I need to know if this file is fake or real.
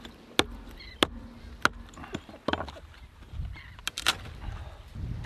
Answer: real